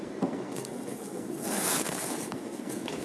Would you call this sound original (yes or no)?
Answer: no